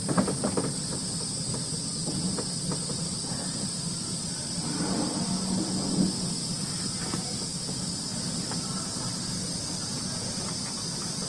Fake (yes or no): no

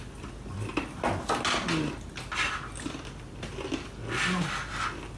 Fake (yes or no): no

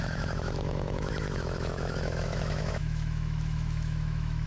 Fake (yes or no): yes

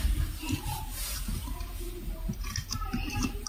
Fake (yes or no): yes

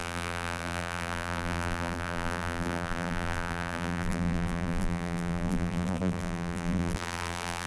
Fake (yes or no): yes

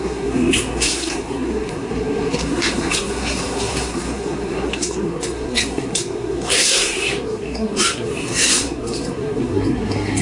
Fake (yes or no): yes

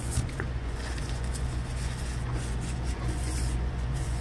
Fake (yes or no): yes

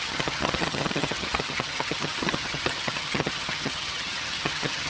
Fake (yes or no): yes